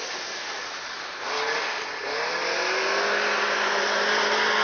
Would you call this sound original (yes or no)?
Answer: yes